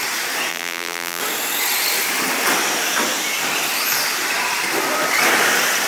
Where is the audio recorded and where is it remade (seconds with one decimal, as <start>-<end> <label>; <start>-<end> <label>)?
0.0-0.5 recorded; 0.5-1.2 remade; 1.2-5.9 recorded